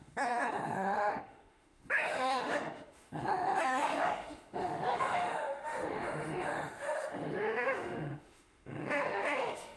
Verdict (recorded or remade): remade